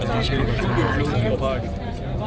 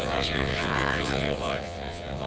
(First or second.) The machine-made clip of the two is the second